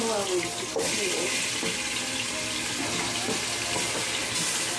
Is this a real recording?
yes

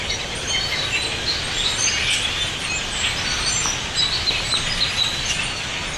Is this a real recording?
yes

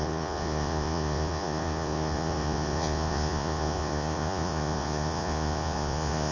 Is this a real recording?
no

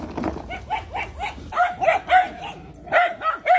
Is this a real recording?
yes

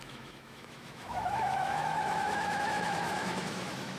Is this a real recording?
no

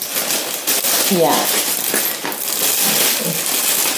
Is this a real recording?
yes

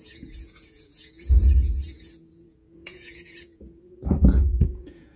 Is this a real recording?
no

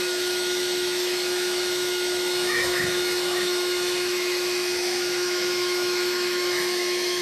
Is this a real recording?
no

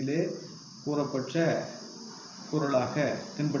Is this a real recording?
no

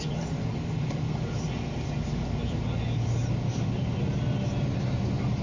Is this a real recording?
yes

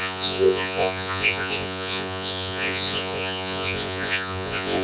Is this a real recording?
no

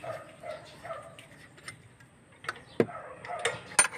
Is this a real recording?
yes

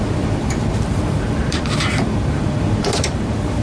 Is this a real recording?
no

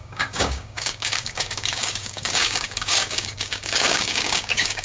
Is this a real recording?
no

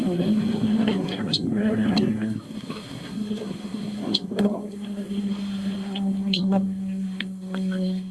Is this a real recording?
no